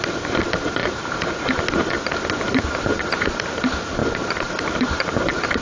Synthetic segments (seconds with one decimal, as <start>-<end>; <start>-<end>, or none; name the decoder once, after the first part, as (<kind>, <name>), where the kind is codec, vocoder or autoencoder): 0.8-1.6 (vocoder, BigVGAN v2); 2.5-3.3; 4.0-5.6